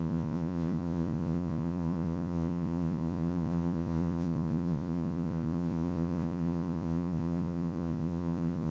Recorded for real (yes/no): no